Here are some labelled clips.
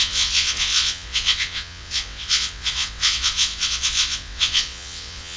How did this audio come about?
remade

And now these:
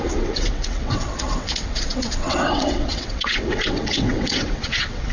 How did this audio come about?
remade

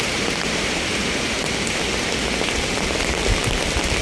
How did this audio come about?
recorded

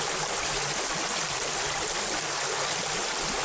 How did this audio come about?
recorded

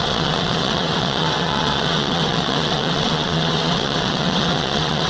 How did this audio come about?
remade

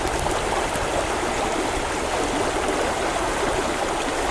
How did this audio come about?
recorded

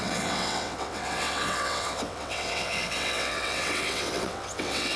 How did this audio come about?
remade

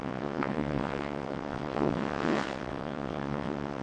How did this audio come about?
remade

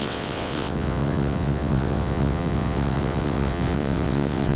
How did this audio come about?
remade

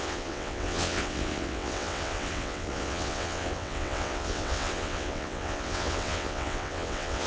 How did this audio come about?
remade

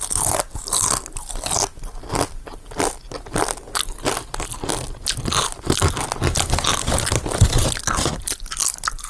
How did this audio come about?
recorded